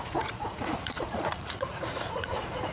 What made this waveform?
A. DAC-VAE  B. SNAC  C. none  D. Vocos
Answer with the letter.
D